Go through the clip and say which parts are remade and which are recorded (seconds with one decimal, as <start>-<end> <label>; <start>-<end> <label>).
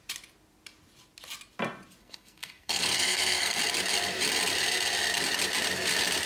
0.0-2.0 recorded; 2.0-3.6 remade; 3.6-6.3 recorded